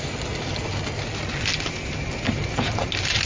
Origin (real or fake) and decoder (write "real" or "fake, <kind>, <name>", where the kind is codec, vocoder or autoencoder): real